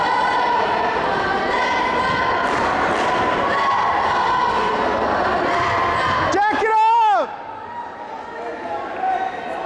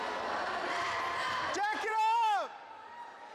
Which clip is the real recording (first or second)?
first